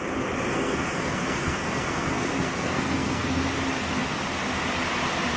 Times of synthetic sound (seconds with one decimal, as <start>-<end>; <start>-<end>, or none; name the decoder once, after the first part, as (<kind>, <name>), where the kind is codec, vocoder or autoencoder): 0.5-3.4 (codec, SNAC)